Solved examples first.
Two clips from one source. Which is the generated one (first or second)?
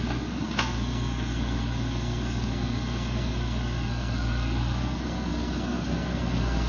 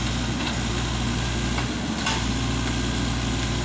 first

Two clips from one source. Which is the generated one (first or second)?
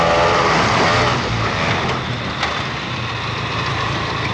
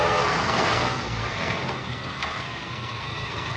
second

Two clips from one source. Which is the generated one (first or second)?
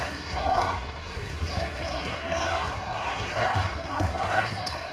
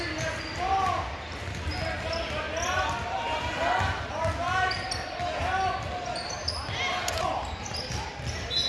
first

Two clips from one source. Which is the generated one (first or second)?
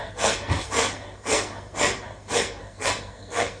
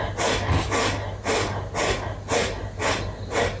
first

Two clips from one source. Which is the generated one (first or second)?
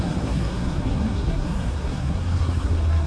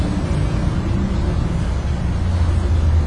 first